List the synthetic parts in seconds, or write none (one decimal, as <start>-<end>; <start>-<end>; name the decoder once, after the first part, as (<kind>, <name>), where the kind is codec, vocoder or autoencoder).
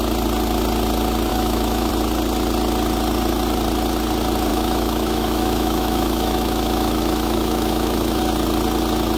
1.3-1.9 (autoencoder, DAC-VAE); 4.5-8.2